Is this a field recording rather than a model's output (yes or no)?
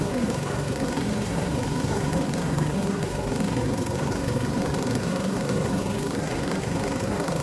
no